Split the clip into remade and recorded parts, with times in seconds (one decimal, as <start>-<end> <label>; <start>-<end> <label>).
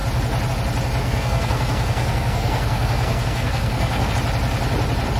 0.0-1.0 recorded; 1.0-4.1 remade; 4.1-5.2 recorded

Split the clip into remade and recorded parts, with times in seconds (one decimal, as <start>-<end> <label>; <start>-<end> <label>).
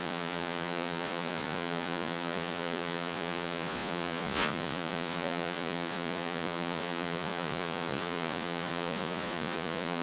0.0-10.0 remade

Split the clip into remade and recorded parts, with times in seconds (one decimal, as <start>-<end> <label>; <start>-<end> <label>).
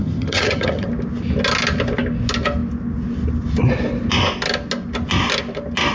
0.0-0.9 remade; 0.9-5.9 recorded